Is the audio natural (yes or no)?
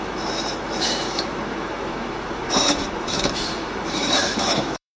no